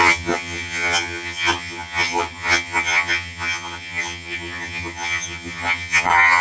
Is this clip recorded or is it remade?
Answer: remade